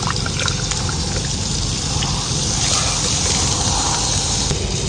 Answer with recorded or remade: recorded